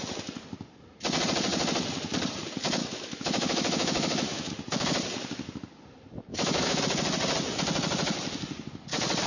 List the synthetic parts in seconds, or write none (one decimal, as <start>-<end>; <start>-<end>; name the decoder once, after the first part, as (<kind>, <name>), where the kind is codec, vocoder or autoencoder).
2.8-4.5 (autoencoder, DAC-VAE); 6.3-6.8